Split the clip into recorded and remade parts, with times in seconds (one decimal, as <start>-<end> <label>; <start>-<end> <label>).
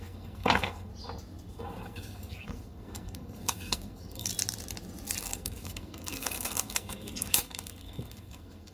0.0-0.9 remade; 0.9-1.5 recorded; 1.5-4.3 remade; 4.3-5.2 recorded; 5.2-8.7 remade